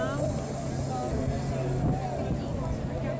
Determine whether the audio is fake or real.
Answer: real